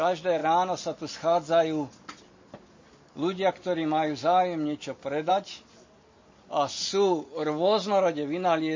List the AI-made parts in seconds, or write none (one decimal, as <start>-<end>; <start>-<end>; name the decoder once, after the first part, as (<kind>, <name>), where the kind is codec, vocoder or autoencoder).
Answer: none